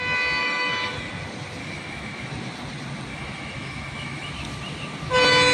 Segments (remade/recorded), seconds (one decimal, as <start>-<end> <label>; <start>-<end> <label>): 0.0-0.4 recorded; 0.4-1.1 remade; 1.1-1.6 recorded; 1.6-2.3 remade; 2.3-3.1 recorded; 3.1-4.3 remade; 4.3-5.5 recorded